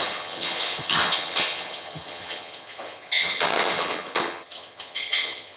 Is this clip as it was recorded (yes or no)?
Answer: no